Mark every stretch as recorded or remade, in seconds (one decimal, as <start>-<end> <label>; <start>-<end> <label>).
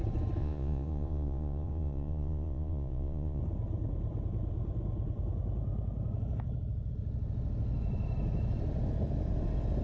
0.0-0.4 recorded; 0.4-3.4 remade; 3.4-9.8 recorded